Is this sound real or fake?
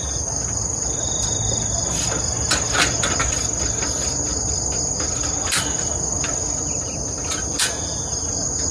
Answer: real